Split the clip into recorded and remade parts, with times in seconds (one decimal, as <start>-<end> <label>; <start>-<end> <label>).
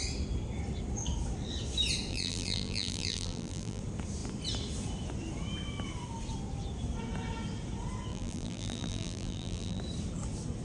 0.0-2.1 recorded; 2.1-3.8 remade; 3.8-8.1 recorded; 8.1-9.8 remade; 9.8-10.6 recorded